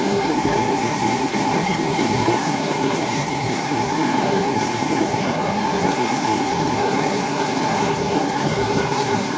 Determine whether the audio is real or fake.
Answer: fake